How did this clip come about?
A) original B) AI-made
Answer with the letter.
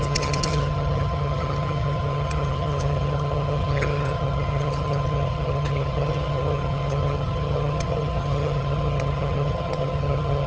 B